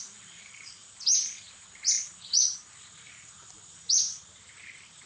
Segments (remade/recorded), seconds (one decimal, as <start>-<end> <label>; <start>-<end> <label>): 0.0-5.1 remade

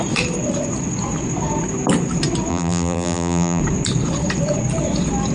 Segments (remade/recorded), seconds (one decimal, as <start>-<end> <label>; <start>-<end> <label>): 0.0-2.5 recorded; 2.5-3.6 remade; 3.6-5.3 recorded

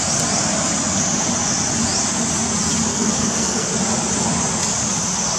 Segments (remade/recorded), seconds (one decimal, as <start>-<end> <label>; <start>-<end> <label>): 0.0-2.9 recorded; 2.9-3.7 remade; 3.7-5.4 recorded

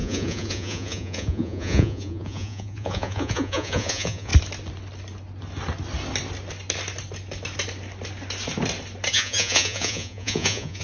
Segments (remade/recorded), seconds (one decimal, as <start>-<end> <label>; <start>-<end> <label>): 0.0-4.3 remade; 4.3-9.1 recorded; 9.1-10.8 remade